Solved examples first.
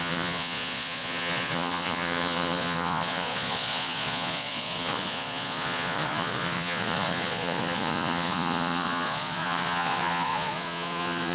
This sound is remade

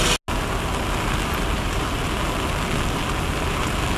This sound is recorded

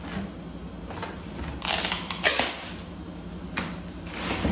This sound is recorded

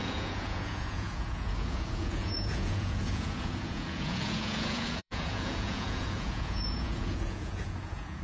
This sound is remade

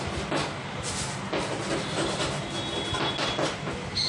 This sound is recorded